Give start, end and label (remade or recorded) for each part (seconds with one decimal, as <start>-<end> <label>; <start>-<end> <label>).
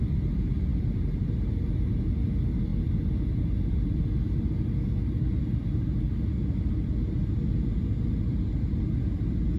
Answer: 0.0-0.7 recorded; 0.7-1.5 remade; 1.5-9.6 recorded